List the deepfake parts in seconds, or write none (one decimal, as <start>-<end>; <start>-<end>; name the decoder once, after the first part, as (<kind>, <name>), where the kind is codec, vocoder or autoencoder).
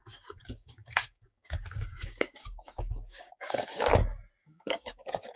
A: 0.0-3.9 (codec, DAC); 4.4-5.4